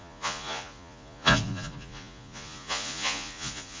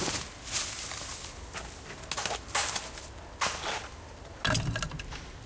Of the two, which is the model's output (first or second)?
first